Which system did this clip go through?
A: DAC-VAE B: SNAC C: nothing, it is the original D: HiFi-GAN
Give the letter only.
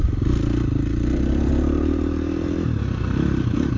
C